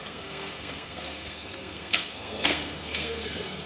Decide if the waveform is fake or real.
fake